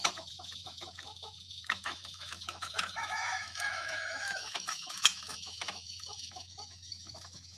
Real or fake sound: fake